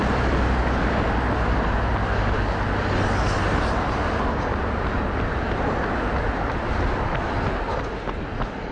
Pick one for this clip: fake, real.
real